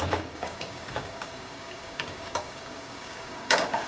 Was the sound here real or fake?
fake